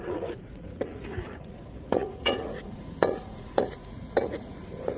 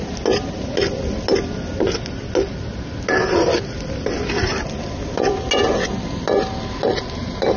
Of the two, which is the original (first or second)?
second